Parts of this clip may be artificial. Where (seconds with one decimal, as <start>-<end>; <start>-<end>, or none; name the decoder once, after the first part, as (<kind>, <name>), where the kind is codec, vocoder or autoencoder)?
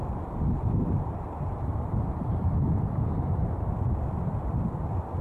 0.8-3.7 (vocoder, BigVGAN v2)